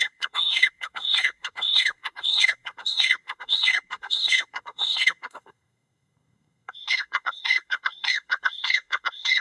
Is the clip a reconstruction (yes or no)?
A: yes